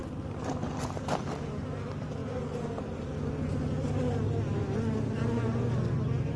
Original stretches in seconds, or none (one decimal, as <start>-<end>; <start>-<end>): 0.0-6.4